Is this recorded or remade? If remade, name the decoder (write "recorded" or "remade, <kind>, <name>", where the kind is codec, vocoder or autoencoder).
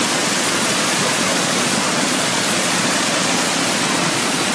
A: remade, vocoder, Vocos